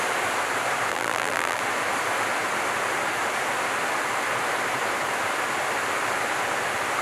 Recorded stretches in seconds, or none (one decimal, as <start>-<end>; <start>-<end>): 0.0-0.9; 1.6-7.0